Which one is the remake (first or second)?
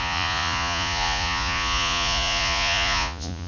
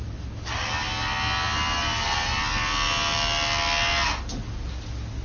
first